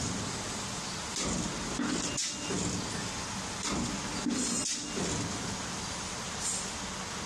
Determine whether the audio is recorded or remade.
recorded